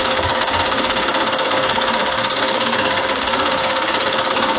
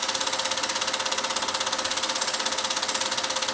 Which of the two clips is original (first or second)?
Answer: second